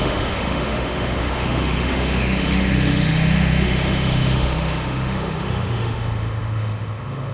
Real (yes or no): no